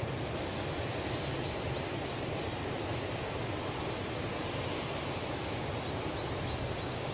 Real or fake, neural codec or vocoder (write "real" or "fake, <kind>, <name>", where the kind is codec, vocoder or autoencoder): real